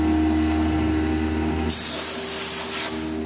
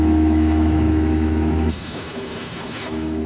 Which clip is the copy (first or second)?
second